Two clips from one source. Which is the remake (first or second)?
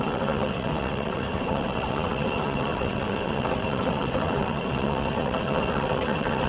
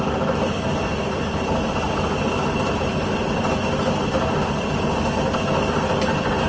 first